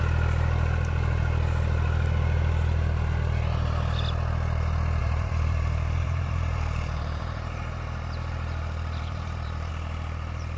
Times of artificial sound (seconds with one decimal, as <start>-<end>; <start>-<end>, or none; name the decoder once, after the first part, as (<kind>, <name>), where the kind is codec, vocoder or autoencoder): 5.0-9.7 (vocoder, BigVGAN v2)